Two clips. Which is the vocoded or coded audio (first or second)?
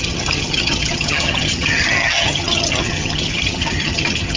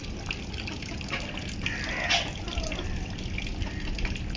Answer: first